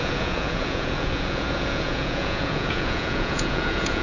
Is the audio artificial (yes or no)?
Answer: yes